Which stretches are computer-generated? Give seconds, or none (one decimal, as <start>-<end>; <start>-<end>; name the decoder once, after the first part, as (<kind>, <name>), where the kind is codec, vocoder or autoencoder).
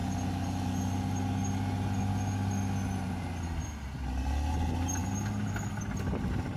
none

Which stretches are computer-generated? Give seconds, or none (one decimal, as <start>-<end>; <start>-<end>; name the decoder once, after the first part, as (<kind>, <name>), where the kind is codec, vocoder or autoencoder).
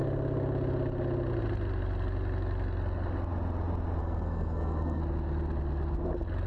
4.0-5.0 (codec, SNAC)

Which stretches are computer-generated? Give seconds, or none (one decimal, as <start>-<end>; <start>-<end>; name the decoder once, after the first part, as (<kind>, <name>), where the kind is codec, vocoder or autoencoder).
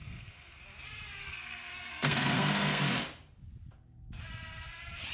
0.0-0.6 (codec, SNAC); 1.2-2.8